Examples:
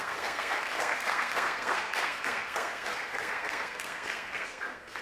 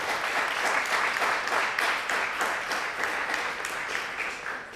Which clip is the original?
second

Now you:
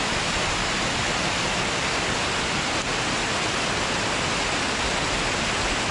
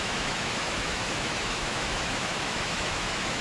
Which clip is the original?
first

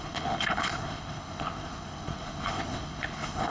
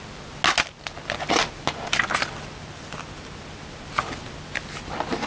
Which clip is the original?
second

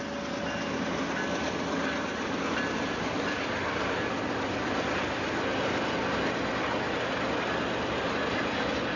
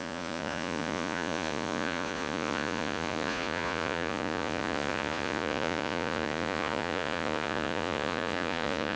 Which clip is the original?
first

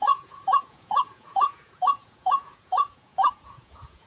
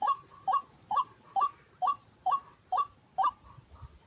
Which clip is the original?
second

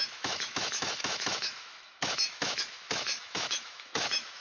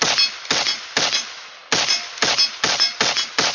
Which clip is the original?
second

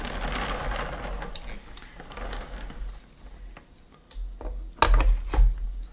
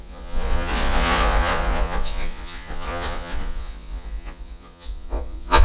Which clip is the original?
first